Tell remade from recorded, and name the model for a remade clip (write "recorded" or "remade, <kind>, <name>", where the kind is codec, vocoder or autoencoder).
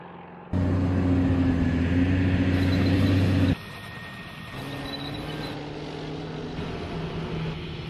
recorded